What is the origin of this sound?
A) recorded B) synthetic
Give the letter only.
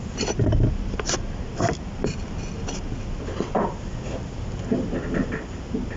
A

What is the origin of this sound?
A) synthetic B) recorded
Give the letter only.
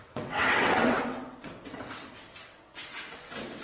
A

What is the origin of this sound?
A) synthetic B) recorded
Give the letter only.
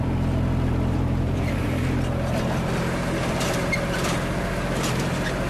A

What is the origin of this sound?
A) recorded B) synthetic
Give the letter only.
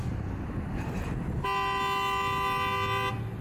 A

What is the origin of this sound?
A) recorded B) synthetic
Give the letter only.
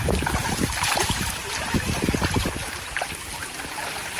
B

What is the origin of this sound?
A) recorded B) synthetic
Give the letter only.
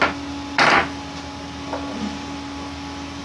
A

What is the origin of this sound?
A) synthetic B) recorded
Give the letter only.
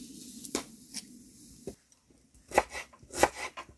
B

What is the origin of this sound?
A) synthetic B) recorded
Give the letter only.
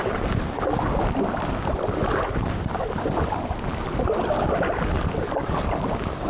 B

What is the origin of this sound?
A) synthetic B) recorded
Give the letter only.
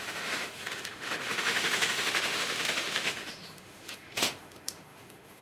A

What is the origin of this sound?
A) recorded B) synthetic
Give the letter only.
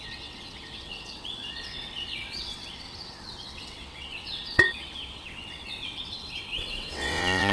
B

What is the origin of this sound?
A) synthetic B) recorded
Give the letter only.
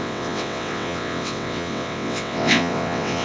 A